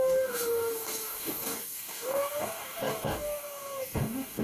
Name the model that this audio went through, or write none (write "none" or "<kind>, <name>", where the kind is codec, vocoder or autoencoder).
codec, DAC